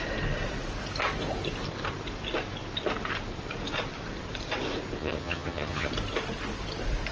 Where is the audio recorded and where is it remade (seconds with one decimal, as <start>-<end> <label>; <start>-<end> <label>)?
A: 0.0-5.0 recorded; 5.0-5.9 remade; 5.9-7.1 recorded